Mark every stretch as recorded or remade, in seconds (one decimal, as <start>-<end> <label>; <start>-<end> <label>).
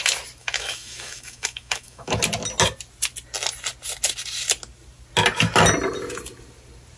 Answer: 0.0-0.4 recorded; 0.4-2.2 remade; 2.2-7.0 recorded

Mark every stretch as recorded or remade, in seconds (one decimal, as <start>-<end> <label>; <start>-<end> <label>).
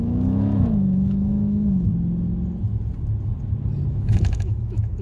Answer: 0.0-1.9 remade; 1.9-3.9 recorded; 3.9-5.0 remade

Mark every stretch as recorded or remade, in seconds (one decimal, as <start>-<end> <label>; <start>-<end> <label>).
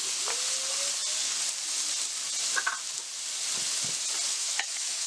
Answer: 0.0-4.3 recorded; 4.3-5.1 remade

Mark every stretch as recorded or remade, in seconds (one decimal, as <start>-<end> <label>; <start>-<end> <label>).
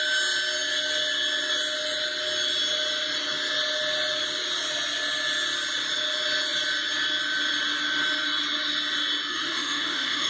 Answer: 0.0-9.3 recorded; 9.3-10.3 remade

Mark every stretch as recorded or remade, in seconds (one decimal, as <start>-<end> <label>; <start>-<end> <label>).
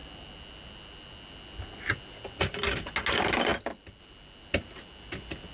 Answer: 0.0-5.5 recorded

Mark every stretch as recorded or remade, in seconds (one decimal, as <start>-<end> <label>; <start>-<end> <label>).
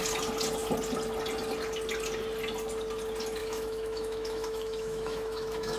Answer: 0.0-3.4 recorded; 3.4-5.8 remade